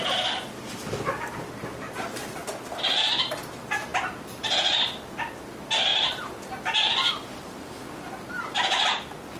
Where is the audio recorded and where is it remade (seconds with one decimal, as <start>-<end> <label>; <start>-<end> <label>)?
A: 0.0-9.4 recorded